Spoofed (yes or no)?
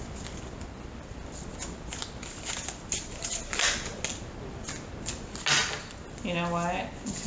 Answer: no